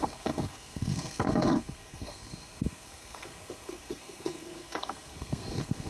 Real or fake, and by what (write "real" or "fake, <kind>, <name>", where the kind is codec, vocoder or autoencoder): fake, codec, SNAC